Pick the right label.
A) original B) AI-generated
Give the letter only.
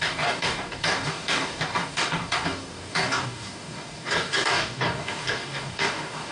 B